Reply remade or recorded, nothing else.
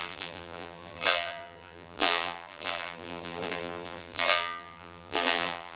remade